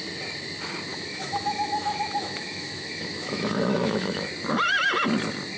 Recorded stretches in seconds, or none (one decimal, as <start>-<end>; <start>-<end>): 0.0-0.9; 4.3-5.6